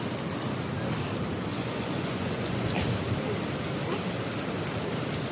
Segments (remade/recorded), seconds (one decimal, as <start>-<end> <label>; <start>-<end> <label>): 0.0-1.5 recorded; 1.5-2.7 remade; 2.7-5.3 recorded